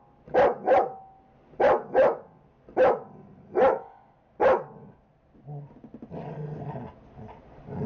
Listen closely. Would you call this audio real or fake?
real